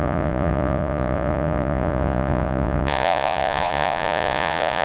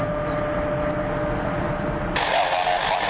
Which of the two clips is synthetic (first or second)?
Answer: first